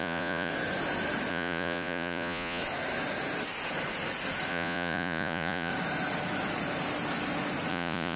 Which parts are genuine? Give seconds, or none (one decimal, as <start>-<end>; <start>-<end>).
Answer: 0.5-1.3; 2.6-4.5; 5.7-7.7